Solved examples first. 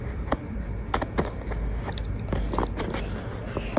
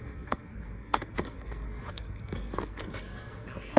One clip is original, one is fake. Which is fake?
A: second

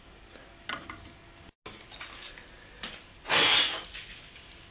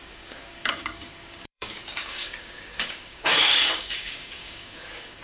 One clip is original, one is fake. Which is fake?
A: second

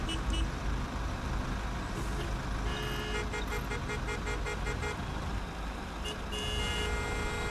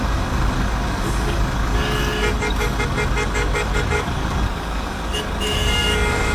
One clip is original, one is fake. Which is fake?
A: second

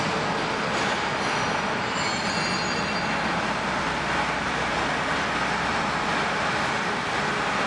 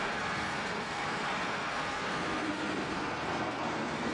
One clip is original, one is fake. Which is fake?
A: second